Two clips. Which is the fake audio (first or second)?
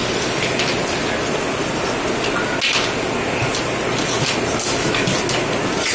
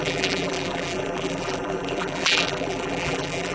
second